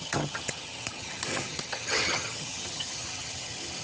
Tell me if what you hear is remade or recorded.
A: remade